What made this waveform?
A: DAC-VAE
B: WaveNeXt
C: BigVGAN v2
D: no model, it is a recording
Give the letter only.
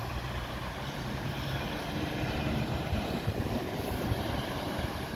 C